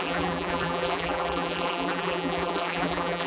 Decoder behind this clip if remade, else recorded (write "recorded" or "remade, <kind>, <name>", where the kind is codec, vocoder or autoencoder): remade, vocoder, BigVGAN v2